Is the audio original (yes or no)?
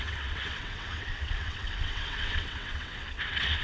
no